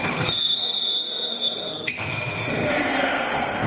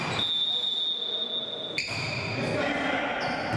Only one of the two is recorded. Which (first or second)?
second